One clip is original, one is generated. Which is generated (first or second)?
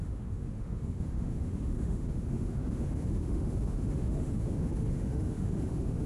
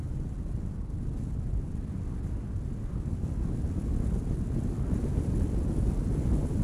first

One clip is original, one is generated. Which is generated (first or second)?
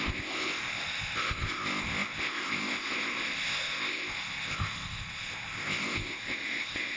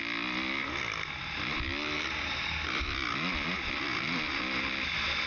first